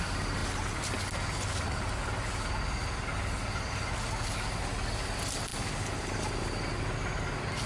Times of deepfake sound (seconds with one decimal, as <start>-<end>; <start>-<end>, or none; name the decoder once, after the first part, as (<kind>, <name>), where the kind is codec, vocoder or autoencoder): none